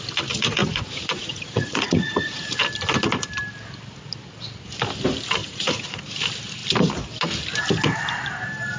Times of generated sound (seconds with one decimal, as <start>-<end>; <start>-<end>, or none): 0.6-2.6; 5.4-6.0